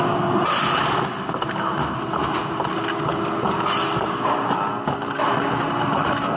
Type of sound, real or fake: real